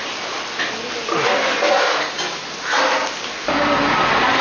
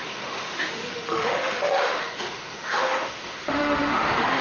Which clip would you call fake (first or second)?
second